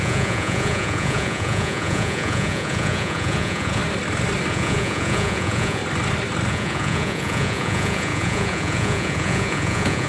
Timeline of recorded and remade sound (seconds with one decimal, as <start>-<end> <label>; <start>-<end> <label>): 0.0-3.8 remade; 3.8-4.5 recorded; 4.5-5.8 remade; 5.8-6.5 recorded; 6.5-10.1 remade